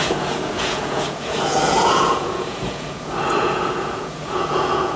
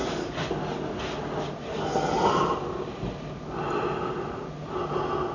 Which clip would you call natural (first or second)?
second